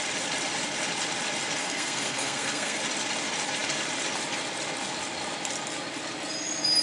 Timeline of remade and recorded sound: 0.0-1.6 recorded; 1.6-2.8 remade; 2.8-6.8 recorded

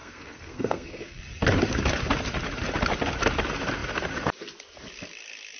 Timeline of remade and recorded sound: 0.0-1.2 remade; 1.2-5.6 recorded